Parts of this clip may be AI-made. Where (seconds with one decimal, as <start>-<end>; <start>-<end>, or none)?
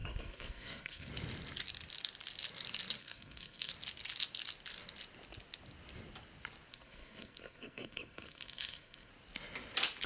0.0-1.1; 3.0-3.7; 6.7-9.1